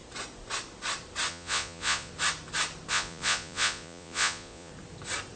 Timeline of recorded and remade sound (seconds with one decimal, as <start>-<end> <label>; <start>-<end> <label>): 0.0-1.3 recorded; 1.3-2.1 remade; 2.1-2.9 recorded; 2.9-4.7 remade; 4.7-5.4 recorded